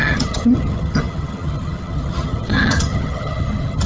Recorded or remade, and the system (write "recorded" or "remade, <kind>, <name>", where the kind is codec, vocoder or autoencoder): remade, vocoder, HiFi-GAN